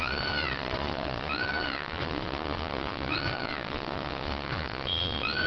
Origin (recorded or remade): remade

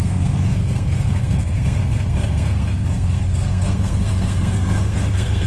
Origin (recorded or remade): remade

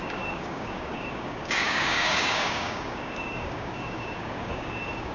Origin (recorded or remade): remade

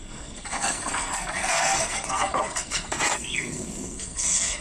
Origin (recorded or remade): remade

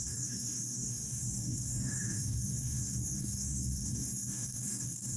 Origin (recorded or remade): remade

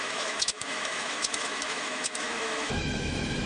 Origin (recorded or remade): remade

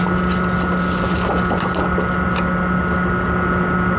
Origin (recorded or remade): recorded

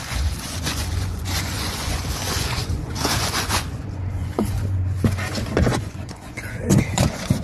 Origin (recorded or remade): remade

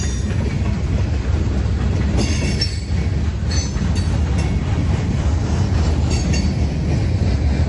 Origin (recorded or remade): recorded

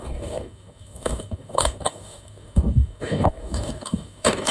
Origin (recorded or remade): remade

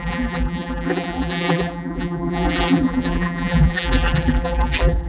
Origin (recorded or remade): remade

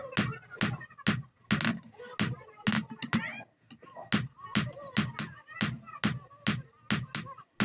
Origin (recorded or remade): recorded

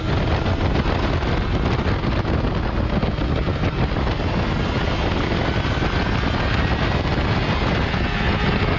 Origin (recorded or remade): recorded